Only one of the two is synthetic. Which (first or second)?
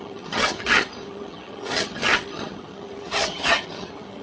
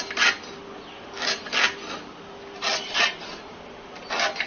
first